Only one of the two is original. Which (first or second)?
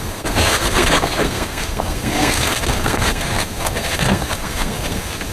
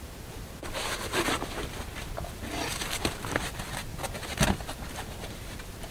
second